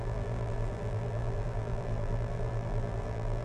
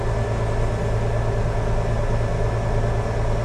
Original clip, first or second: second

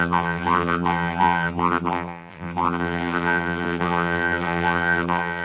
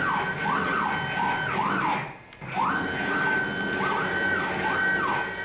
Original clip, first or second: second